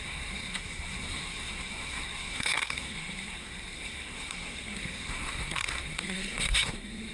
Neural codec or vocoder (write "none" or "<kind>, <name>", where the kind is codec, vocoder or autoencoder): codec, SNAC